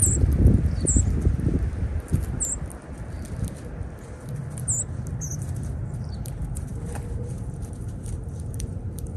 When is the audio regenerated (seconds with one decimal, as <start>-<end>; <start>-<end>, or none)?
5.2-9.2